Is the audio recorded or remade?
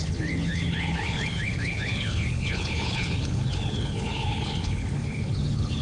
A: remade